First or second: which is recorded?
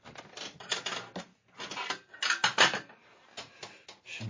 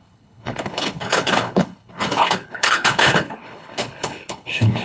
first